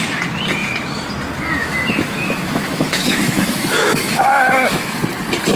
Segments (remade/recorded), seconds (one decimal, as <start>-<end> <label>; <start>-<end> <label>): 0.0-1.6 recorded; 1.6-5.0 remade; 5.0-5.6 recorded